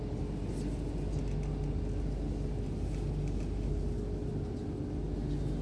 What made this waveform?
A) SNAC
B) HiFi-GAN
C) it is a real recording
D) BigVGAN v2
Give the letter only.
C